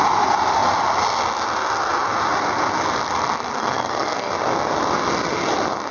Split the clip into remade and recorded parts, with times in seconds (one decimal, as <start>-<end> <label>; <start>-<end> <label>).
0.0-3.6 recorded; 3.6-4.3 remade; 4.3-5.9 recorded